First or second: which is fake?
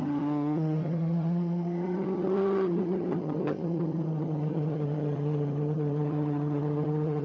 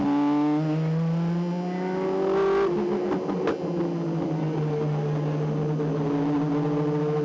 first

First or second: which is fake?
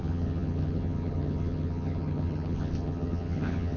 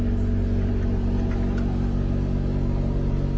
first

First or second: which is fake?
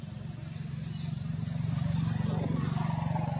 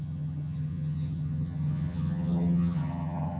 second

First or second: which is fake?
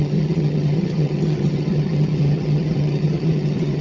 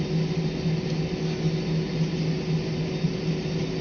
first